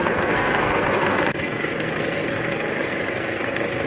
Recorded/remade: remade